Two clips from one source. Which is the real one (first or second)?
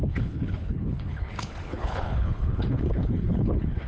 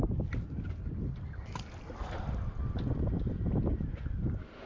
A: second